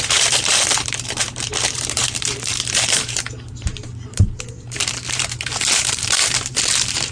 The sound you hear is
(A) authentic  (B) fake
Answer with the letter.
B